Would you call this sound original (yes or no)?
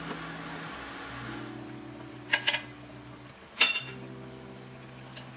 yes